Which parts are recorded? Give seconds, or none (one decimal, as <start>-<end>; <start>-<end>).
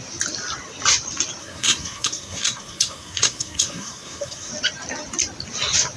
0.0-1.4; 4.5-6.0